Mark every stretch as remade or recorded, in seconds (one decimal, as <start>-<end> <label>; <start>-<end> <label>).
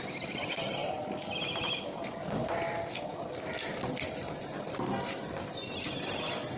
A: 0.0-6.6 recorded